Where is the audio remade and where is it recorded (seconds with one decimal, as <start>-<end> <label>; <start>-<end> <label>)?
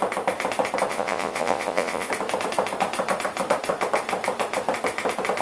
0.0-0.9 recorded; 0.9-2.1 remade; 2.1-5.4 recorded